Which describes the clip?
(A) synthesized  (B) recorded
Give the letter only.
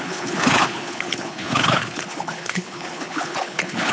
A